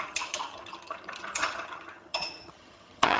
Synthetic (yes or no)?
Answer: yes